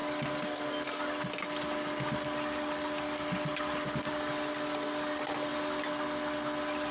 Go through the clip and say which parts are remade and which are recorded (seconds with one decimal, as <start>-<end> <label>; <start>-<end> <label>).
0.0-6.9 recorded